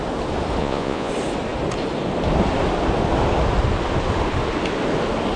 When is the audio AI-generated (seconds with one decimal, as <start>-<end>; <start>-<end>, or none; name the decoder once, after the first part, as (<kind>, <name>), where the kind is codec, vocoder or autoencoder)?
0.6-1.1 (vocoder, Vocos)